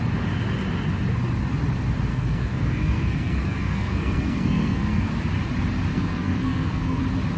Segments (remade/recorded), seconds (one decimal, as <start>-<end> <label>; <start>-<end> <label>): 0.0-2.1 recorded; 2.1-5.1 remade; 5.1-5.9 recorded; 5.9-7.0 remade; 7.0-7.4 recorded